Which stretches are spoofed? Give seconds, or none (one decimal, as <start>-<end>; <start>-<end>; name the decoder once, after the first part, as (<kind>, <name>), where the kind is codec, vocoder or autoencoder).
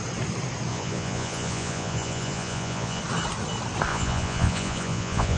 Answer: 0.7-3.0 (vocoder, Vocos); 3.9-5.4